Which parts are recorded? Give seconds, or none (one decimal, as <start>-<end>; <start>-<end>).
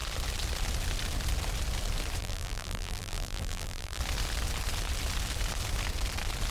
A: 0.0-2.2; 4.0-6.5